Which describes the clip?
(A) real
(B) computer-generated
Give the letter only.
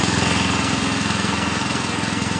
B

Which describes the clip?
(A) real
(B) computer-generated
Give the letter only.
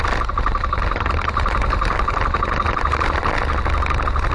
A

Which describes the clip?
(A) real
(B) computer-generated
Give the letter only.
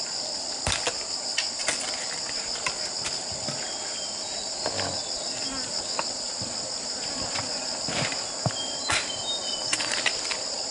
A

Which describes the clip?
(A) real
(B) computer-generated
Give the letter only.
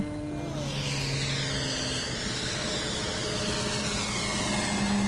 A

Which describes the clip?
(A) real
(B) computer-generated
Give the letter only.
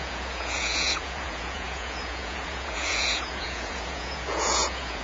B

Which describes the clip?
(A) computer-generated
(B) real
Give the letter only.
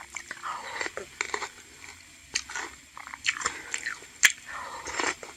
B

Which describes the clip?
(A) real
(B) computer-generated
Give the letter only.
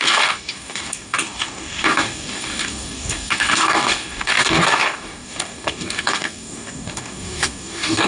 B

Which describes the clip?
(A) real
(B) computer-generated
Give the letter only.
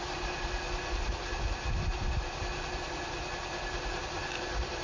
A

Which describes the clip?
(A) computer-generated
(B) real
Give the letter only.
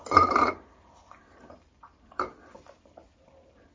A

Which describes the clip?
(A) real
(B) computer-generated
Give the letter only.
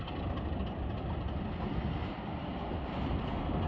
A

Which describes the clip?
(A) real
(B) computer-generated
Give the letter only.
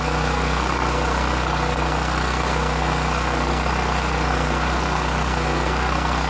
B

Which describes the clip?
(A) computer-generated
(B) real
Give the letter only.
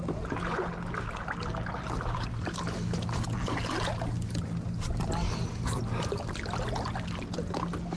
B